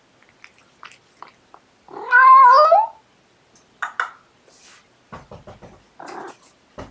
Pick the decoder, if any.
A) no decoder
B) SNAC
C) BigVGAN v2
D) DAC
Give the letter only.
A